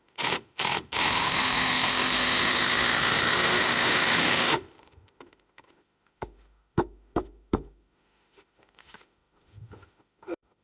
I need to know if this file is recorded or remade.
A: remade